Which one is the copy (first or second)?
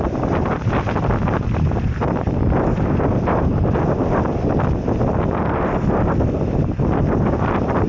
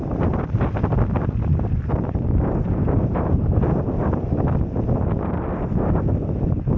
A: second